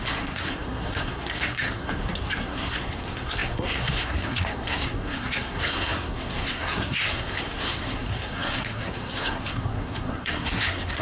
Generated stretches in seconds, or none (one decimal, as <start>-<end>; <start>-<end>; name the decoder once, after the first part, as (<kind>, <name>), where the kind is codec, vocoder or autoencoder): 0.0-11.0 (codec, SNAC)